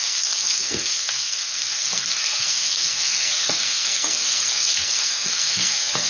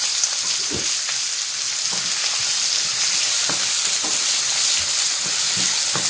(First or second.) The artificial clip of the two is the first